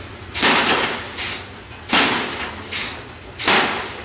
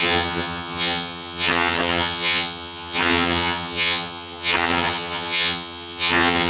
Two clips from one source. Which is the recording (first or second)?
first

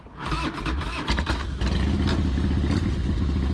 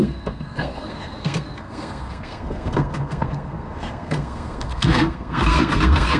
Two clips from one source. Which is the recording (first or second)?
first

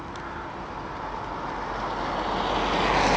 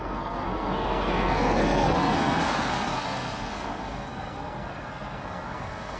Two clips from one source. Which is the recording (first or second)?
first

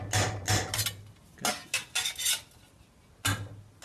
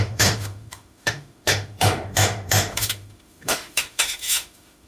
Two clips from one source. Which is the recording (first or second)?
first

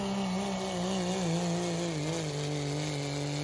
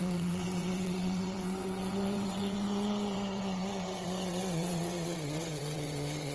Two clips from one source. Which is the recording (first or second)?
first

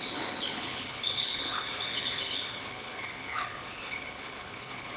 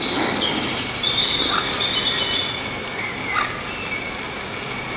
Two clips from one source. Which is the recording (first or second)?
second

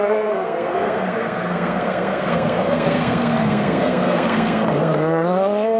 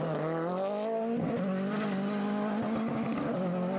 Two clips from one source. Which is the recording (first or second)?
second